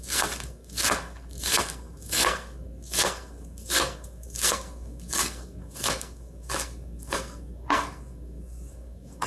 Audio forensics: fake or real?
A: fake